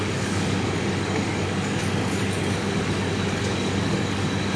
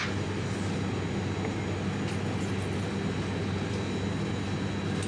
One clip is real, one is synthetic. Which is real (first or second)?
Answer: second